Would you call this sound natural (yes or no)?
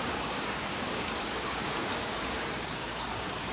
no